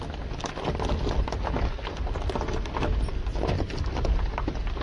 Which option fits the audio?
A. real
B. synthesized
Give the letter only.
A